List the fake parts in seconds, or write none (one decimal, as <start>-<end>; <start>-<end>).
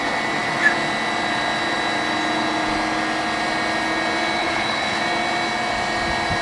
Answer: 4.4-5.0